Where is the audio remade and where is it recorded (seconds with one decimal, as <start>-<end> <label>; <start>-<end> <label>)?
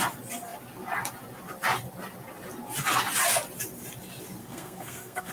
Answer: 0.0-4.4 recorded; 4.4-5.3 remade